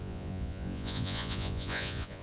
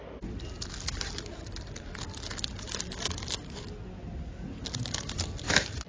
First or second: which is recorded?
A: second